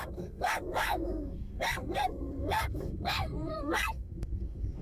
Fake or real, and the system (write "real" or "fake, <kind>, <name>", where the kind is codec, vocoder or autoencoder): fake, codec, SNAC